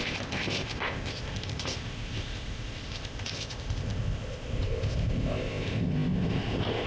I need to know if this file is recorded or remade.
remade